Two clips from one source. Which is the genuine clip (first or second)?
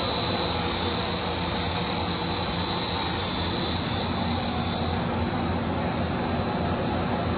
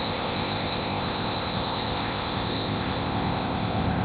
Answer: first